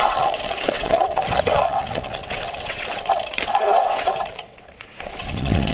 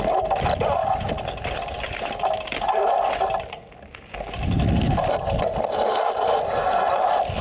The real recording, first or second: second